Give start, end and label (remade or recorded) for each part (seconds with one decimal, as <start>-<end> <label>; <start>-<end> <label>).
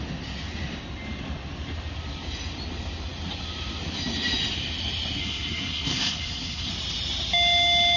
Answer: 0.0-5.2 recorded; 5.2-6.7 remade; 6.7-8.0 recorded